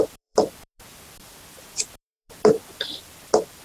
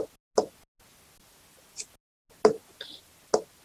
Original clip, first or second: second